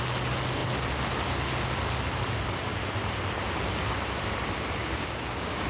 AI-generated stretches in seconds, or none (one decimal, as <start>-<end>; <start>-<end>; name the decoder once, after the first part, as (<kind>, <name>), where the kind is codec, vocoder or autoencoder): 4.8-5.7 (codec, DAC)

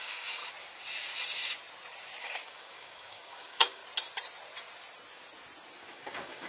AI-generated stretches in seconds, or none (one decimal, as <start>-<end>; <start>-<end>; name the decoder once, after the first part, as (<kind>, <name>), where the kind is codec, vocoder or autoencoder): 0.0-0.4 (codec, DAC); 2.2-3.8; 5.8-6.5

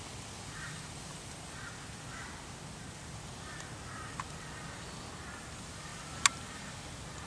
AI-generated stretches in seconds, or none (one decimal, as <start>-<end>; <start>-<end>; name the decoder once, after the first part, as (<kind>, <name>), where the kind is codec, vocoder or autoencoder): none

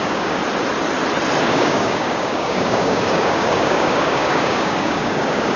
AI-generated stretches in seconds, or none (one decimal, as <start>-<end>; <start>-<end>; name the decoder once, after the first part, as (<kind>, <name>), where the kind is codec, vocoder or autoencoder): 0.0-0.4 (codec, DAC); 1.4-5.6

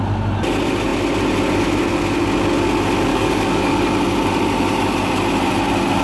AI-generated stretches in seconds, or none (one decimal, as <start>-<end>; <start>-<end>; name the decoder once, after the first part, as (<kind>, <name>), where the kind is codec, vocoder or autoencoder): 3.1-3.7 (codec, DAC)